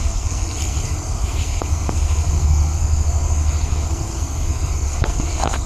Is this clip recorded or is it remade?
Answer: remade